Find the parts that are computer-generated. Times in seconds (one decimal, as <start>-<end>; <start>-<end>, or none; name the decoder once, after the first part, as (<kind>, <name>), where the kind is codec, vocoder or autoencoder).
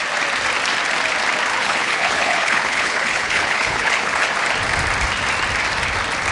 1.5-4.3 (codec, HILCodec)